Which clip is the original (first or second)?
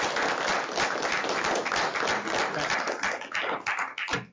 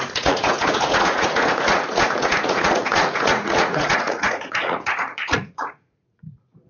first